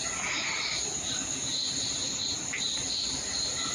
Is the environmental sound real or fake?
real